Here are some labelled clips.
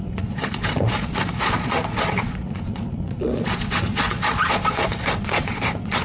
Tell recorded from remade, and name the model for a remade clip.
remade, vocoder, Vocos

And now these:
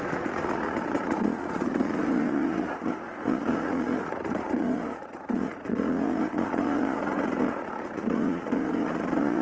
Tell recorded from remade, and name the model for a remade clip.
remade, vocoder, Vocos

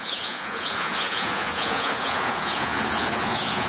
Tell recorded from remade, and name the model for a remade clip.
remade, vocoder, Vocos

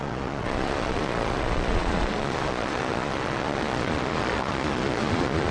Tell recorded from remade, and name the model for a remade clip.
remade, vocoder, Vocos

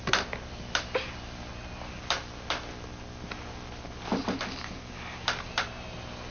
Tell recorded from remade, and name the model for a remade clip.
recorded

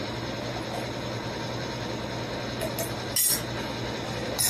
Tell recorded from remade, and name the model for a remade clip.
recorded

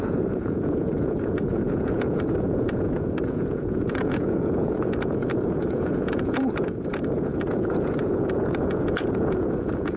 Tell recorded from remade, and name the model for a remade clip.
remade, vocoder, Vocos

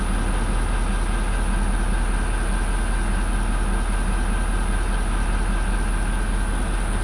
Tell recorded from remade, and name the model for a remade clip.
recorded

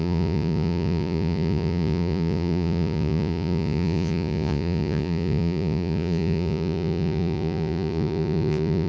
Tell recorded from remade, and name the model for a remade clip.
remade, vocoder, Vocos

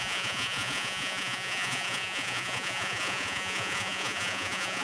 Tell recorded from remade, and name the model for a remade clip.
remade, vocoder, Vocos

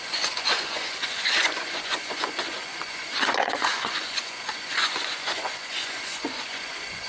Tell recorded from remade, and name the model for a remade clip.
remade, vocoder, Vocos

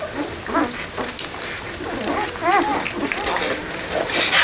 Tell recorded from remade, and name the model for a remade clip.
recorded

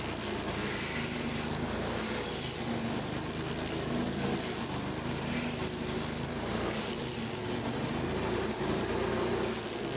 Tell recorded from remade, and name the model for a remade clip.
recorded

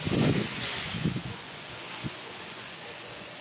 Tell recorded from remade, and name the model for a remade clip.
remade, vocoder, Vocos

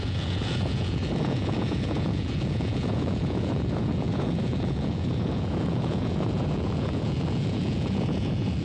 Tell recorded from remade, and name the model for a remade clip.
remade, vocoder, Vocos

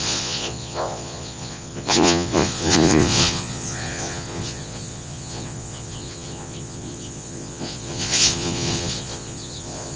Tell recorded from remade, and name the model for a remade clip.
remade, vocoder, Vocos